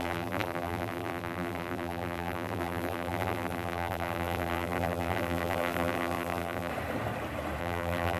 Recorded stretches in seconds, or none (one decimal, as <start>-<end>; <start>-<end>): 6.7-7.6